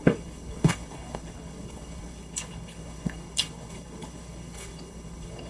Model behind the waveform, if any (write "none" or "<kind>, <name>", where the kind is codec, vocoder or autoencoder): codec, HILCodec